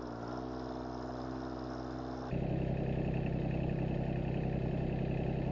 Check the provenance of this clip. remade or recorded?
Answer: recorded